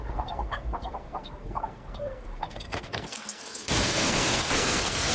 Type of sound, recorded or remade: remade